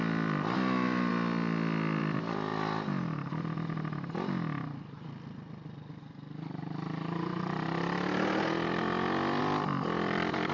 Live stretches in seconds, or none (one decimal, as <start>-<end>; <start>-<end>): 1.1-2.0; 2.5-6.6; 7.3-9.4